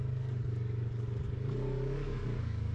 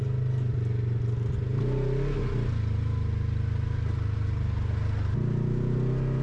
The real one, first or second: second